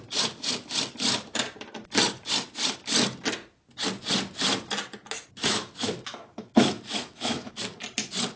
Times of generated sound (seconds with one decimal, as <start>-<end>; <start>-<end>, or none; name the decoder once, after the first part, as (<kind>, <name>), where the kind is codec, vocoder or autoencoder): 5.4-7.5 (autoencoder, DAC-VAE)

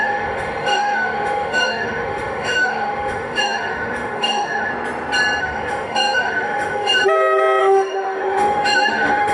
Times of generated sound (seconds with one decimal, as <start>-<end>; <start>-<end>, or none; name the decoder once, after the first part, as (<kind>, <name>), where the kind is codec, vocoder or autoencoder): 0.0-4.7 (autoencoder, DAC-VAE); 5.4-7.0; 7.6-9.3

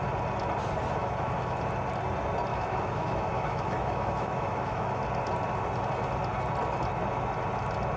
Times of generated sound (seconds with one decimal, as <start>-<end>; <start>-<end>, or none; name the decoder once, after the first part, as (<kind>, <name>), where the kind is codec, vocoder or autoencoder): 1.0-1.6 (autoencoder, DAC-VAE); 2.5-5.0

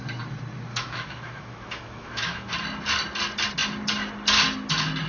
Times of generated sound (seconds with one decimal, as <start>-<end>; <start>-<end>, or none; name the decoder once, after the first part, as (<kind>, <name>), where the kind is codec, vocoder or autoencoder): 0.7-2.5 (autoencoder, DAC-VAE)